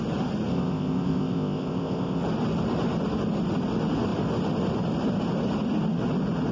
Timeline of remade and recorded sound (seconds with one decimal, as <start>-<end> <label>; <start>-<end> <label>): 0.0-0.5 recorded; 0.5-2.2 remade; 2.2-6.5 recorded